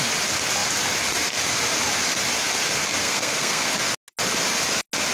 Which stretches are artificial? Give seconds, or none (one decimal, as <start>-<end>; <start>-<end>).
3.0-3.7